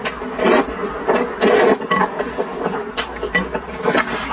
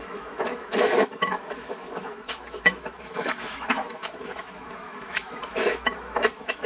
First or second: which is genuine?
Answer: first